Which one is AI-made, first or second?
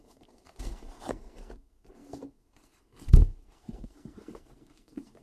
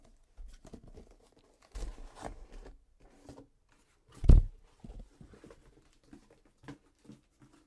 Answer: first